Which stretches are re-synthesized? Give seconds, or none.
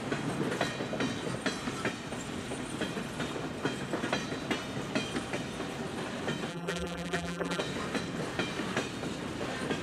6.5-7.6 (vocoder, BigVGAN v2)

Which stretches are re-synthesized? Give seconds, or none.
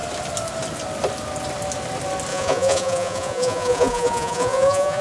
2.3-5.0 (vocoder, Vocos)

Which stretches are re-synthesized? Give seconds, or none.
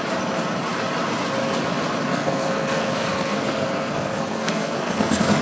2.1-5.4 (codec, SNAC)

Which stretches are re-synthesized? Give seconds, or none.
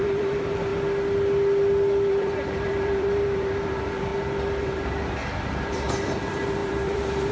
0.0-0.7 (vocoder, BigVGAN v2); 2.1-4.1; 4.6-7.3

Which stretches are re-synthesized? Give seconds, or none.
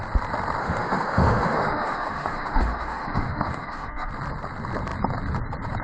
0.6-4.1 (autoencoder, DAC-VAE)